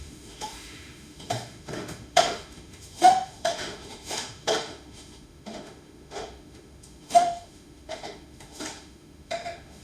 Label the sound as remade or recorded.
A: remade